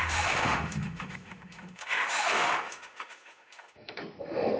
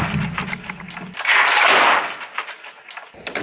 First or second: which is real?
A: second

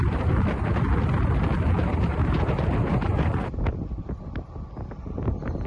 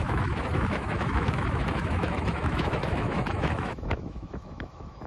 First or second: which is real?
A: first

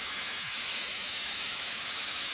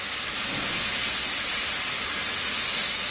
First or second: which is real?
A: second